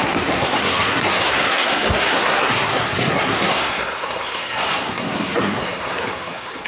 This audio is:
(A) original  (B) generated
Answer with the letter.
B